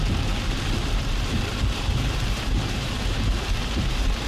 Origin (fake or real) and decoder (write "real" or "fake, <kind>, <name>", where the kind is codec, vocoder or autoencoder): fake, vocoder, BigVGAN v2